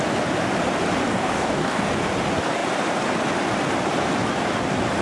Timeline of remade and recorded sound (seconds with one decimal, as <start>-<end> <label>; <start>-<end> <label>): 0.0-1.1 recorded; 1.1-1.9 remade; 1.9-5.0 recorded